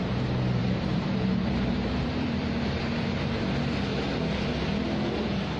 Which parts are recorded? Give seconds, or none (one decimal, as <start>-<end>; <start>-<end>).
0.0-0.6; 3.4-5.6